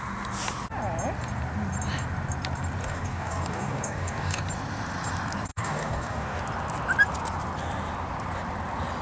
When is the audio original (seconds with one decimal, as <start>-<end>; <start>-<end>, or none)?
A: 0.0-2.8; 4.4-5.5; 6.4-9.0